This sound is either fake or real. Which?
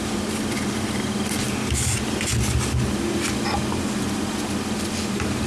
real